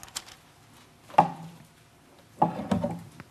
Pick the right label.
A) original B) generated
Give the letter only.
A